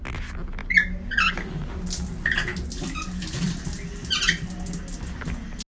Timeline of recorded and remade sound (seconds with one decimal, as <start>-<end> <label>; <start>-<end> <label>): 0.0-5.7 recorded